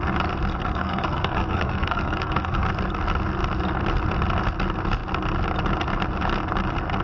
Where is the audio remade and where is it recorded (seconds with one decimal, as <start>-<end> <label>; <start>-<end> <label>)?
0.0-0.5 recorded; 0.5-2.7 remade; 2.7-7.0 recorded